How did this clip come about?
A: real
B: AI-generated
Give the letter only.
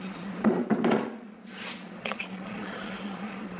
B